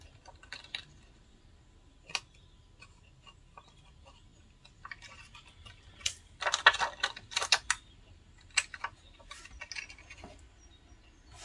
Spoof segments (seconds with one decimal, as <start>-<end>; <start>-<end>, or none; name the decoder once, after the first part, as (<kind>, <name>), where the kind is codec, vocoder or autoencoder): none